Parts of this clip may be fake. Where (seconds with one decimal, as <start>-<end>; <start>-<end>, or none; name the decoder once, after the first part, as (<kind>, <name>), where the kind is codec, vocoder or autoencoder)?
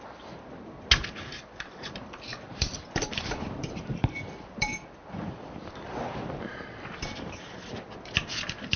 1.0-5.9 (vocoder, BigVGAN v2)